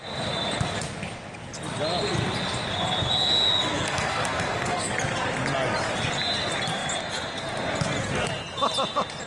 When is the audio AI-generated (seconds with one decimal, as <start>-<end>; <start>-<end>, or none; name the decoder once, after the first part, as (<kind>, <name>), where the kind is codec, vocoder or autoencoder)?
3.7-4.9 (codec, SNAC)